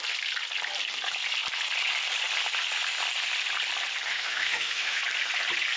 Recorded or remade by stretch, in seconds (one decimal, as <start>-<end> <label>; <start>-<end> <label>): 0.0-4.1 recorded; 4.1-5.0 remade; 5.0-5.8 recorded